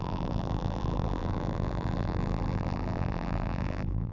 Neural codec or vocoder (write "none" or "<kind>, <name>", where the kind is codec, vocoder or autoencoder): vocoder, BigVGAN v2